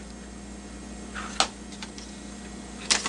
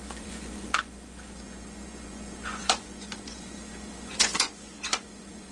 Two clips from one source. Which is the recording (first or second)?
first